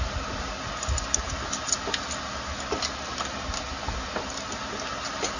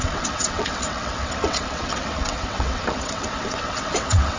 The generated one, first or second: second